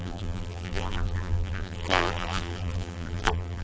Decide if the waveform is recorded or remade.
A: remade